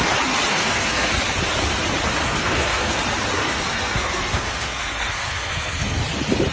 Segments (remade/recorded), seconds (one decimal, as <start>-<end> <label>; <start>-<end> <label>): 0.0-0.5 recorded; 0.5-1.1 remade; 1.1-2.2 recorded; 2.2-3.0 remade; 3.0-3.4 recorded; 3.4-6.0 remade; 6.0-6.5 recorded